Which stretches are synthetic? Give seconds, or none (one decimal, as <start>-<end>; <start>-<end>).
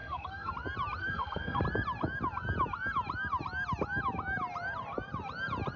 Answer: 0.0-0.5; 1.0-1.6